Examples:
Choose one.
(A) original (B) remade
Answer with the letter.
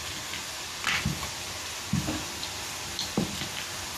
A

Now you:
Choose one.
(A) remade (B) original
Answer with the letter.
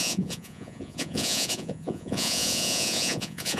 A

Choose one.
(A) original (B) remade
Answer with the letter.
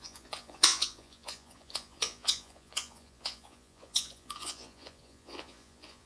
B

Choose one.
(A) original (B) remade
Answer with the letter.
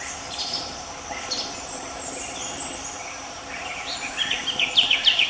B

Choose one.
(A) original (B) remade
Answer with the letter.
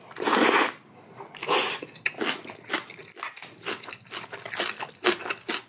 A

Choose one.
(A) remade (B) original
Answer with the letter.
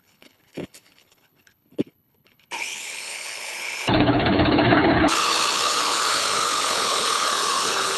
A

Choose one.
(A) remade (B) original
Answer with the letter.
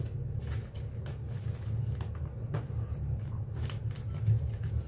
B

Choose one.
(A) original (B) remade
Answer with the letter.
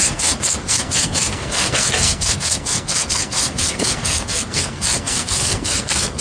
B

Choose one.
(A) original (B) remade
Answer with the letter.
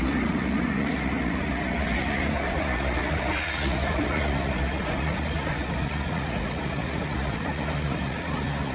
B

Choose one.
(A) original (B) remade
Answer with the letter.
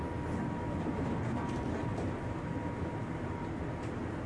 A